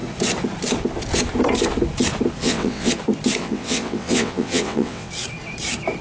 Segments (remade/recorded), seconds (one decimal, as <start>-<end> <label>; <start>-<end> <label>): 0.0-2.4 recorded; 2.4-2.9 remade; 2.9-3.4 recorded; 3.4-5.1 remade; 5.1-6.0 recorded